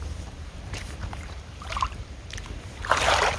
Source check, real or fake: fake